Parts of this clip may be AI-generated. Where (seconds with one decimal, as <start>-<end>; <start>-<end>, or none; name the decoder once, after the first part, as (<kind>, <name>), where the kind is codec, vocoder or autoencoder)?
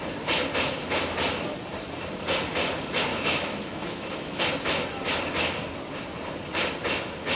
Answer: 3.1-4.4 (autoencoder, DAC-VAE)